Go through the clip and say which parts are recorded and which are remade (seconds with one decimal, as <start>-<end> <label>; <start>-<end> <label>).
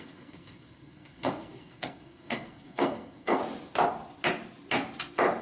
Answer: 0.0-3.4 remade; 3.4-5.4 recorded